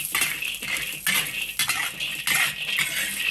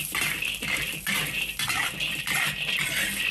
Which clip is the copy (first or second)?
second